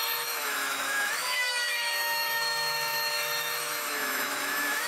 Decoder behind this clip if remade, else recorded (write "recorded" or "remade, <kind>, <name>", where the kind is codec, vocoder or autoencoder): remade, autoencoder, DAC-VAE